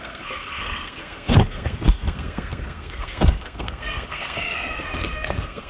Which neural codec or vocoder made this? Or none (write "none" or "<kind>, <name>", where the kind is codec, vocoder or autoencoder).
codec, SNAC